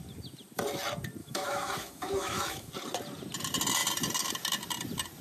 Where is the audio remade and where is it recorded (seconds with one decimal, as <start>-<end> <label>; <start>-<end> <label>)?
0.0-1.2 recorded; 1.2-2.7 remade; 2.7-5.2 recorded